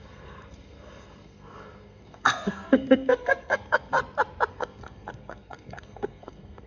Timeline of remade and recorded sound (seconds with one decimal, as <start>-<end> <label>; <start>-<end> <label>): 0.0-4.0 remade; 4.0-4.5 recorded; 4.5-6.7 remade